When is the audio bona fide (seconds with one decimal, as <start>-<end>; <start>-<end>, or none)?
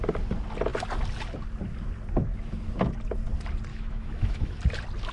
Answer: 0.0-3.7; 4.6-5.1